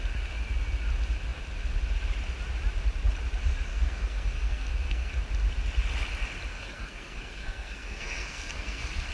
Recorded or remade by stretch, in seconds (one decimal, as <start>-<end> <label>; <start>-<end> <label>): 0.0-3.7 recorded; 3.7-5.1 remade; 5.1-6.5 recorded; 6.5-9.1 remade